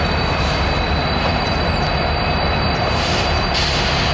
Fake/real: real